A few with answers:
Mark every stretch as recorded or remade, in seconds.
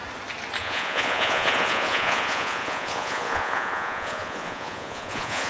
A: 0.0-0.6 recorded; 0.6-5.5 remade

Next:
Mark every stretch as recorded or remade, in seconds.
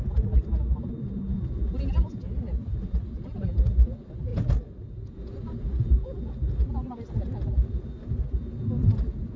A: 0.0-9.4 recorded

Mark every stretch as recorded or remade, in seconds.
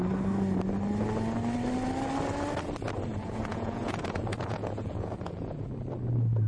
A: 0.0-3.1 recorded; 3.1-5.7 remade; 5.7-6.5 recorded